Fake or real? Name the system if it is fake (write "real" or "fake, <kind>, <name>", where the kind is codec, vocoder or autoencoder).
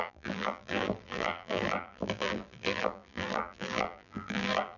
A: fake, vocoder, BigVGAN v2